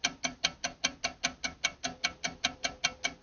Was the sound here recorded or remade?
recorded